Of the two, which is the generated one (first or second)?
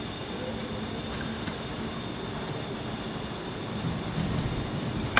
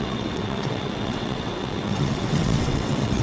second